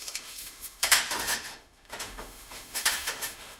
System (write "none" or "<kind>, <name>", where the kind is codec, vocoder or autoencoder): autoencoder, DAC-VAE